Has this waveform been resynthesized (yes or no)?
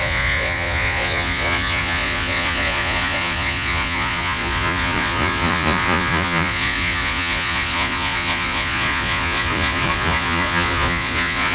yes